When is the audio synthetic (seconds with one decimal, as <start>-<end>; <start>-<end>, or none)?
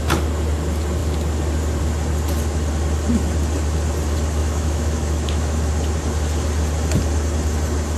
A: 4.4-5.7